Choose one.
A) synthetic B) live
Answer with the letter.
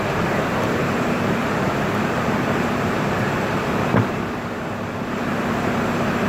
A